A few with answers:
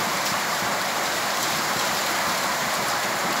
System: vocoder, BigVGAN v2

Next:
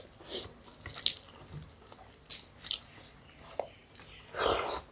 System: none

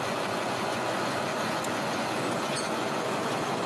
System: vocoder, Vocos